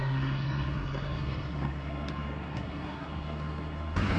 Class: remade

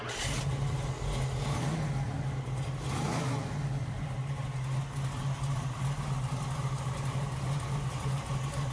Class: recorded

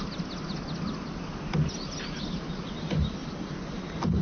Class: recorded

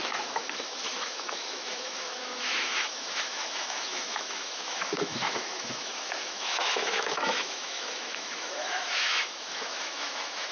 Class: remade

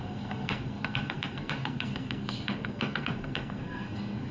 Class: remade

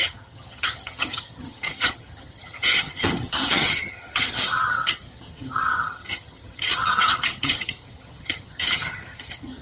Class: remade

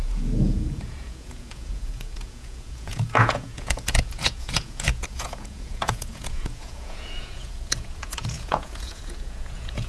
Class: remade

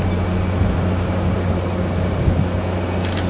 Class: recorded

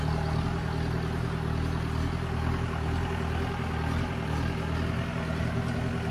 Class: recorded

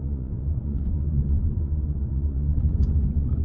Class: remade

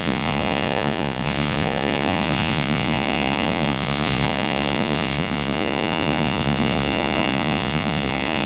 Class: remade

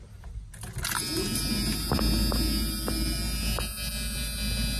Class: recorded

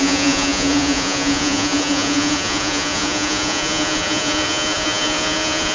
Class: remade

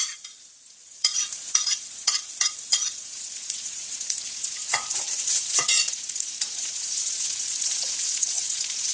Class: remade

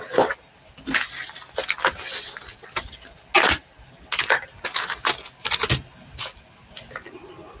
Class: recorded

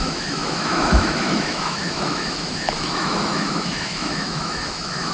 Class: remade